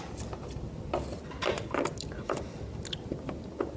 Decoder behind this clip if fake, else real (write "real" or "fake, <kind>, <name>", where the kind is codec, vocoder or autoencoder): real